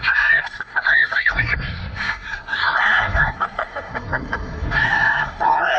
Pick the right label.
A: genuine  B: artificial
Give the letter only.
B